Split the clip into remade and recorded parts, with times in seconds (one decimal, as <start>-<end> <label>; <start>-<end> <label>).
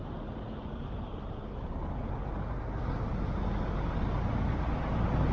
0.0-0.7 recorded; 0.7-1.1 remade; 1.1-4.3 recorded; 4.3-5.3 remade